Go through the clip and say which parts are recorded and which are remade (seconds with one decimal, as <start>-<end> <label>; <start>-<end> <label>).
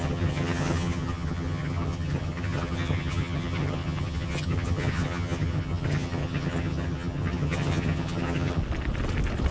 0.0-8.6 remade; 8.6-9.5 recorded